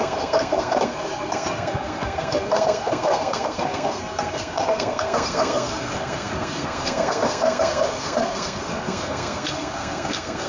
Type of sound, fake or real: fake